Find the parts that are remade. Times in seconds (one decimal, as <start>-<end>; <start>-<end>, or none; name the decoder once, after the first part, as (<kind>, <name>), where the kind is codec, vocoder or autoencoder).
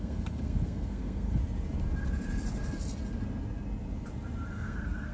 0.0-1.4 (codec, SNAC); 4.5-5.1